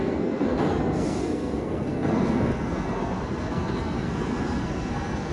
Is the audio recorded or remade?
remade